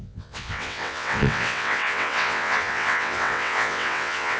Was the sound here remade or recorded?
remade